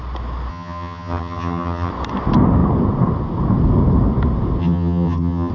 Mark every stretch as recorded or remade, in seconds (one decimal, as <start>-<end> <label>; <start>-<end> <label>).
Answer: 0.0-0.5 recorded; 0.5-1.9 remade; 1.9-4.6 recorded; 4.6-5.5 remade